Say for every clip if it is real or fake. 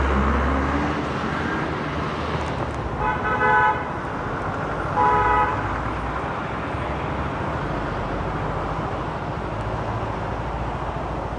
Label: real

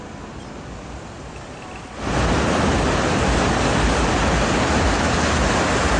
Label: real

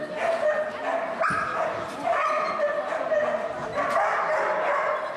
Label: real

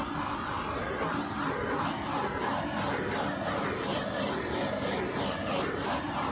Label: real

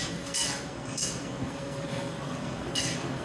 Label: fake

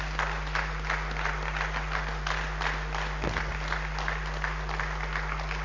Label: real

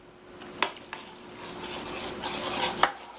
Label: real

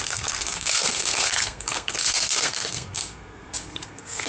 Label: fake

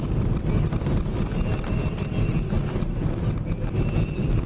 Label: real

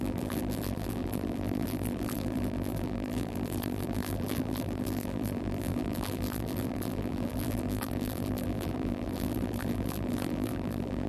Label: fake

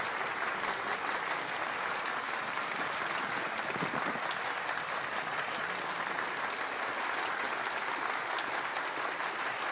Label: real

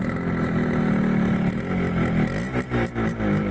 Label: real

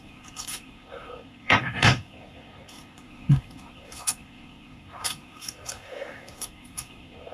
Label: fake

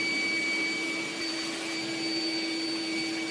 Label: real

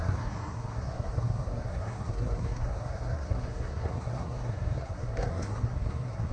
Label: fake